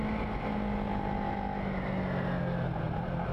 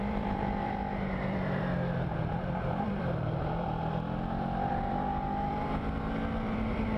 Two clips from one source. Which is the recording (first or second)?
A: first